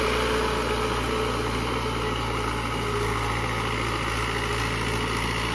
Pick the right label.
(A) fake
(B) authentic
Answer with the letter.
B